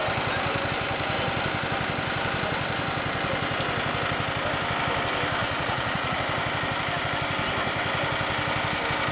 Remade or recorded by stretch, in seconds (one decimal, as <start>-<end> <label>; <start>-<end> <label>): 0.0-5.4 recorded; 5.4-6.2 remade; 6.2-9.1 recorded